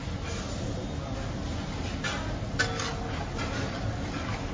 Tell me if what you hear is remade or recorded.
recorded